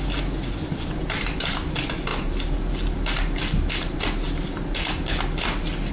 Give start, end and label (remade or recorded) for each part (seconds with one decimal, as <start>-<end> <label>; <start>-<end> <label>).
0.0-5.9 recorded